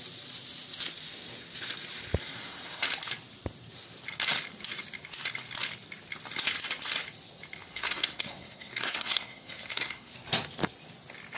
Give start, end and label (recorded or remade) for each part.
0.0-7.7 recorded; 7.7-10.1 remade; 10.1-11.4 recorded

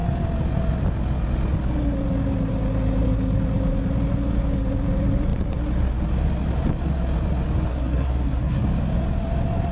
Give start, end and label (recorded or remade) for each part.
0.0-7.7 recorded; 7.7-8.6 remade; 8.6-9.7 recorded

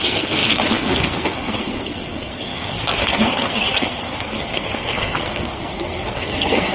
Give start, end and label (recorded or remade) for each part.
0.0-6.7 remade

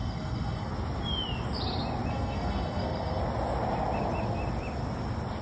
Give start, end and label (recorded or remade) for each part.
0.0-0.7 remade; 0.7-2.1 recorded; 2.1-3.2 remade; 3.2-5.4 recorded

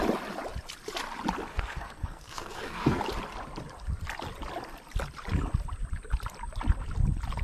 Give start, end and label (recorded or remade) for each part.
0.0-1.5 recorded; 1.5-3.0 remade; 3.0-7.4 recorded

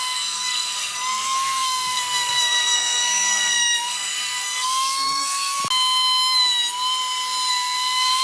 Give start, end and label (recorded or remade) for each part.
0.0-5.6 remade; 5.6-7.5 recorded; 7.5-8.2 remade

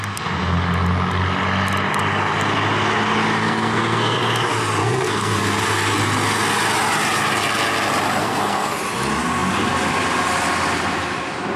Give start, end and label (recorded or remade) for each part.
0.0-3.4 recorded; 3.4-4.2 remade; 4.2-4.8 recorded; 4.8-5.6 remade; 5.6-8.2 recorded; 8.2-8.7 remade; 8.7-11.6 recorded

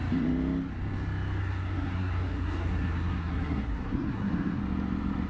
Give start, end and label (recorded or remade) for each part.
0.0-1.4 recorded; 1.4-4.6 remade; 4.6-5.3 recorded